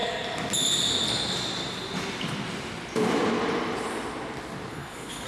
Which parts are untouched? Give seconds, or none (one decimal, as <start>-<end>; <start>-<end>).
0.0-4.7